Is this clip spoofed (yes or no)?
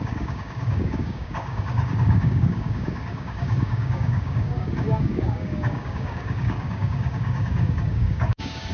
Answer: yes